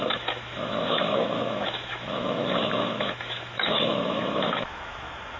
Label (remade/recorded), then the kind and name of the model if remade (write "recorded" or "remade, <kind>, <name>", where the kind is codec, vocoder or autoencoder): remade, autoencoder, DAC-VAE